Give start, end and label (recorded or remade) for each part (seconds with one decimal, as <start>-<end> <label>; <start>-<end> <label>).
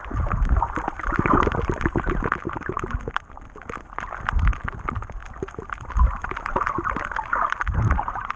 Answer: 0.0-8.4 recorded